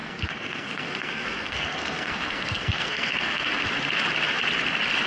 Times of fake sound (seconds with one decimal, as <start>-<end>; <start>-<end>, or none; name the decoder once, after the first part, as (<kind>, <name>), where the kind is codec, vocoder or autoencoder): 0.0-3.5 (codec, SNAC)